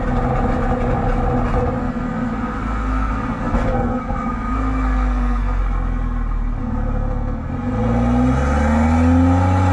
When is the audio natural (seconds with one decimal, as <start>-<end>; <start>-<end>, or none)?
0.0-1.8; 5.6-6.6; 7.5-9.7